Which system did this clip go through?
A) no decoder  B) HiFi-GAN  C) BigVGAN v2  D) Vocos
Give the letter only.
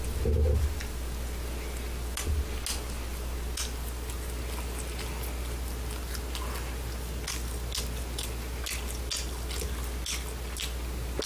A